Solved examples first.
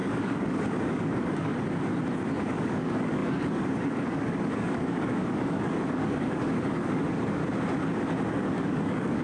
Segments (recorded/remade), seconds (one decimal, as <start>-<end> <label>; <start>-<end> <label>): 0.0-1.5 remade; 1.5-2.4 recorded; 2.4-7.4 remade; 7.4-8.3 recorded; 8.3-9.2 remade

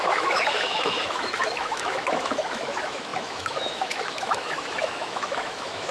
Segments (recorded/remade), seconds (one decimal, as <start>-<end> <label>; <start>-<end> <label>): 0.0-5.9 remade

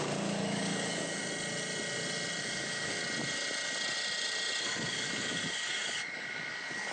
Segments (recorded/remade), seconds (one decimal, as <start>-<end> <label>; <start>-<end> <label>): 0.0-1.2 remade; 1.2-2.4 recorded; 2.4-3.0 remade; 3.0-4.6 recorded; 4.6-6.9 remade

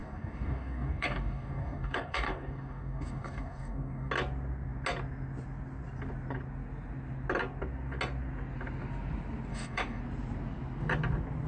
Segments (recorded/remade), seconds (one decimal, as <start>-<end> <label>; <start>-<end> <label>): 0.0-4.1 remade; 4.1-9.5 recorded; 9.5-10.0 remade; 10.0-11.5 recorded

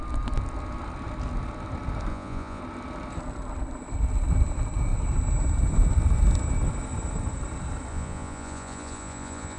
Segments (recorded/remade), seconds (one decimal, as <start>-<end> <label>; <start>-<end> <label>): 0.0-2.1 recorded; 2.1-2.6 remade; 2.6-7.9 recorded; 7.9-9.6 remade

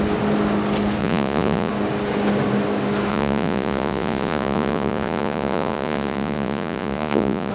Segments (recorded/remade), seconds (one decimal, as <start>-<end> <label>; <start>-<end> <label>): 0.0-1.0 recorded; 1.0-1.7 remade; 1.7-3.1 recorded; 3.1-7.5 remade

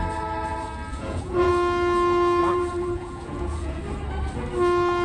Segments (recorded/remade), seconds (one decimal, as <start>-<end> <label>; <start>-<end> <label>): 0.0-0.9 recorded; 0.9-1.5 remade; 1.5-2.4 recorded; 2.4-3.8 remade; 3.8-5.0 recorded